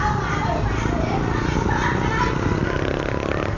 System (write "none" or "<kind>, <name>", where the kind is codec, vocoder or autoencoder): none